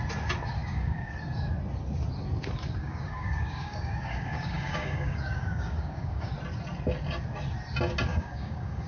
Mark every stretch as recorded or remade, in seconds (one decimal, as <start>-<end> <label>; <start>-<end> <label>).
0.0-0.6 recorded; 0.6-1.1 remade; 1.1-2.8 recorded; 2.8-6.3 remade; 6.3-8.1 recorded; 8.1-8.9 remade